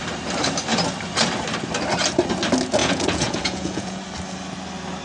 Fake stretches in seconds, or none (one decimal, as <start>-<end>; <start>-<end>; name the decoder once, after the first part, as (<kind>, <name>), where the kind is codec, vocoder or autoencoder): 2.8-4.0 (vocoder, Vocos)